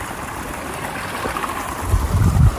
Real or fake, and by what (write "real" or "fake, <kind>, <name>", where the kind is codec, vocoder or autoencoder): real